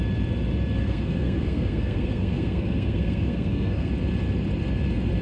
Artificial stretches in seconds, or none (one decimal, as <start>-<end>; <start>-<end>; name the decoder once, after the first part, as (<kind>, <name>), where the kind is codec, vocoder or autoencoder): 0.8-3.9 (codec, SNAC)